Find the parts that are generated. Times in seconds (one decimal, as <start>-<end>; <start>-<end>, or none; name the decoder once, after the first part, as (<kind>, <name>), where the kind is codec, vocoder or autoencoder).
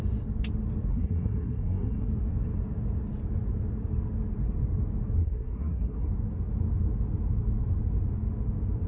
0.9-2.1 (codec, SNAC); 5.2-6.1